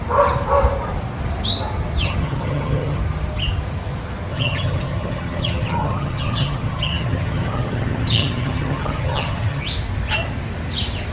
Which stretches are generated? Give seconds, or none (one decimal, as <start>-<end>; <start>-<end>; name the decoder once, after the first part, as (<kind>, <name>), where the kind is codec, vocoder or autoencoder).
2.0-3.0 (vocoder, HiFi-GAN); 4.3-9.6